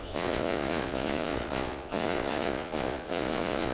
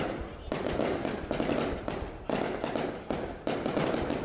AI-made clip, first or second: first